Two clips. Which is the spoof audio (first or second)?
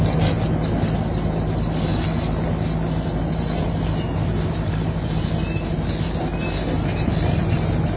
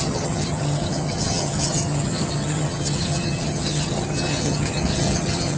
second